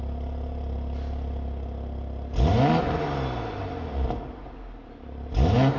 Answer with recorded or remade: recorded